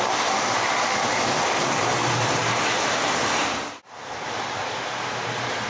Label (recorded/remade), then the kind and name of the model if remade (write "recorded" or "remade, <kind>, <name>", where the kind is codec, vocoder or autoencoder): recorded